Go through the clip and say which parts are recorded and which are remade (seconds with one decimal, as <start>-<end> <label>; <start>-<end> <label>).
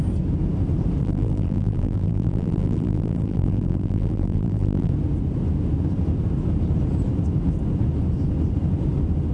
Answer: 0.0-1.0 recorded; 1.0-4.9 remade; 4.9-9.3 recorded